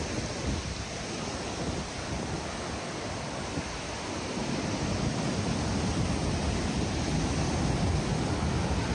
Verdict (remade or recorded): recorded